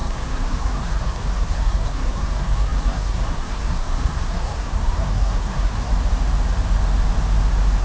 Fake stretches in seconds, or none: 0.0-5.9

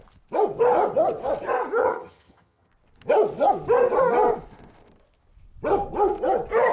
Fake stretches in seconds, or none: 1.8-2.7